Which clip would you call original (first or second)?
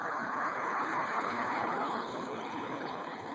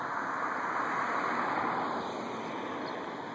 second